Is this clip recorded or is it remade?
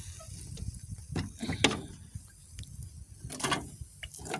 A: recorded